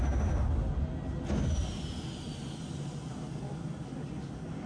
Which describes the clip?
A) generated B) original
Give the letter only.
B